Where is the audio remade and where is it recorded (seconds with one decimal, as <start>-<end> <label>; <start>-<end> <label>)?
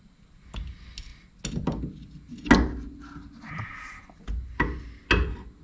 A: 0.0-5.6 recorded